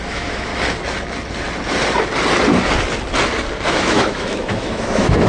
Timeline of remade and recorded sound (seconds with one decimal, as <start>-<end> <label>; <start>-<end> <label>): 0.0-0.5 remade; 0.5-3.7 recorded; 3.7-5.3 remade